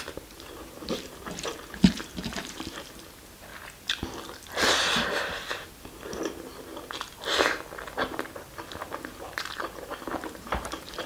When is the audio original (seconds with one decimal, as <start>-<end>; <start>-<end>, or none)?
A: 3.5-8.6